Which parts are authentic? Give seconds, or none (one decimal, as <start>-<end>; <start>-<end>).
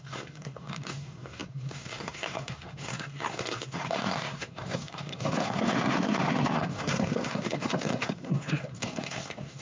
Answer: none